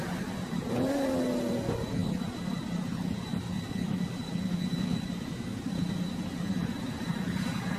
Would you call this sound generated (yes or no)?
no